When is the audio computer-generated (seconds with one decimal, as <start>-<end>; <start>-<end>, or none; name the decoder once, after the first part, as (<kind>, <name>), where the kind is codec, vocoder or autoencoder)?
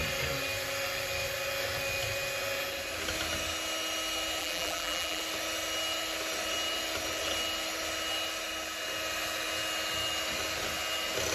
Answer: 4.4-5.2 (vocoder, BigVGAN v2)